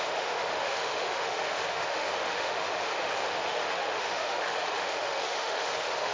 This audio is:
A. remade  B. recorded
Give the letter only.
A